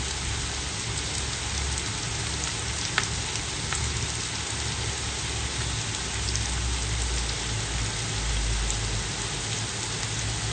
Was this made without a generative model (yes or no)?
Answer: yes